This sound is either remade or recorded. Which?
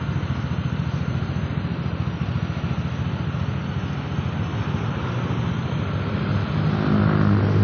recorded